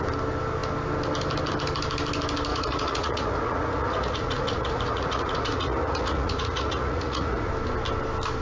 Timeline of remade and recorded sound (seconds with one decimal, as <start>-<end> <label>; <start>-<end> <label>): 0.0-2.5 recorded; 2.5-7.5 remade; 7.5-8.4 recorded

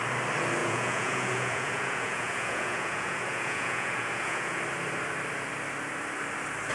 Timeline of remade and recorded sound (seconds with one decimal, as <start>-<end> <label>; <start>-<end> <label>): 0.0-0.6 recorded; 0.6-4.6 remade; 4.6-6.7 recorded

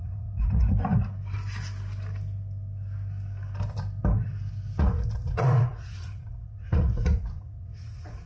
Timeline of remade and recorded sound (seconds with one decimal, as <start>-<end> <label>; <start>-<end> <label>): 0.0-0.6 remade; 0.6-4.8 recorded; 4.8-8.3 remade

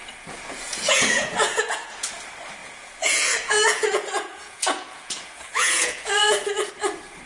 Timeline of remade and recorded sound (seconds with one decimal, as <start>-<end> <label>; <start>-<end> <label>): 0.0-2.2 remade; 2.2-2.6 recorded; 2.6-6.7 remade; 6.7-7.3 recorded

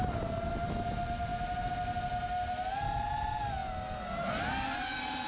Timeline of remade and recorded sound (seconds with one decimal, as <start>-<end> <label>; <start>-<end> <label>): 0.0-5.3 recorded

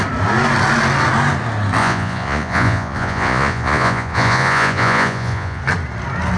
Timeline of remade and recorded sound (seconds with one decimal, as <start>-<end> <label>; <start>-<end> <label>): 0.0-1.8 recorded; 1.8-5.6 remade; 5.6-6.4 recorded

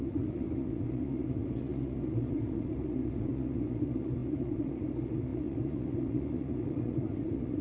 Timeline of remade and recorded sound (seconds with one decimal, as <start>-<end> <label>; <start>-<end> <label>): 0.0-7.6 remade

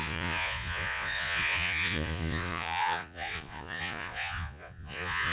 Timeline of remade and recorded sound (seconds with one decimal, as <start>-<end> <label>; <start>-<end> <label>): 0.0-5.3 remade